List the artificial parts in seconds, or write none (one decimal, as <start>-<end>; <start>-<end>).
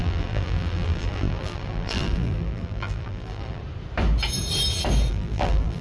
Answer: 0.0-3.6; 5.1-5.8